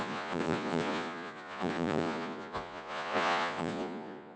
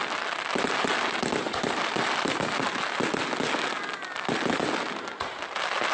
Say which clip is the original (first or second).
second